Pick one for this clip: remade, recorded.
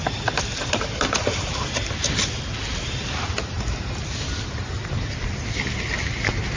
recorded